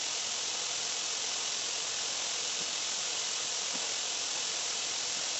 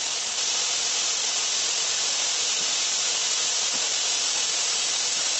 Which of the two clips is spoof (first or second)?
first